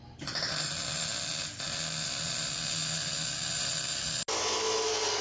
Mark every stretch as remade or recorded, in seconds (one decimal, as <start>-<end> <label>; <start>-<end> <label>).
0.0-5.2 recorded